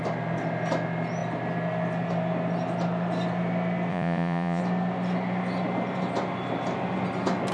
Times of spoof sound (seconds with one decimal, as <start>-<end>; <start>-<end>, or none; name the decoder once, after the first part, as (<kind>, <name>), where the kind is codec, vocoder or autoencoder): 3.9-4.6 (vocoder, Vocos)